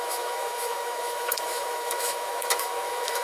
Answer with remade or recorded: remade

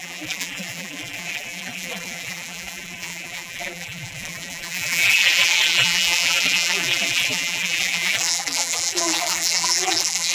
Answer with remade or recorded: remade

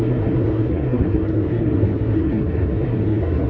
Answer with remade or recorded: remade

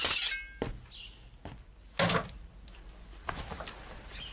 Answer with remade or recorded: recorded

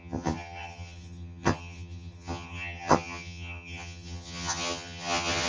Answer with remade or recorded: remade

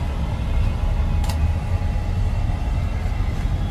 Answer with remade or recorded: recorded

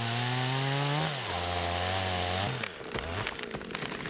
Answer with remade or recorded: recorded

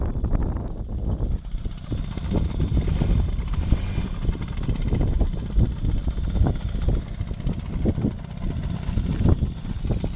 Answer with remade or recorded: recorded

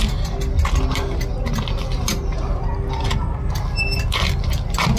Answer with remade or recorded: recorded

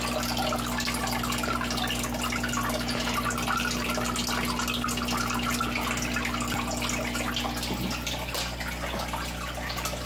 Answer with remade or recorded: recorded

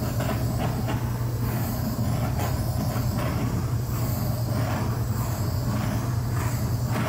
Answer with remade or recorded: recorded